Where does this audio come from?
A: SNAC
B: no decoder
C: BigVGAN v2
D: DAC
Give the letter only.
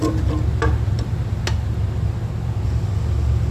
B